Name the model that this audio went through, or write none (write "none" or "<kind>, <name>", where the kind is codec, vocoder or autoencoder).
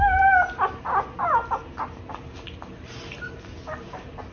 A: none